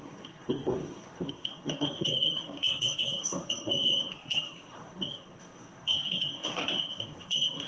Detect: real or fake fake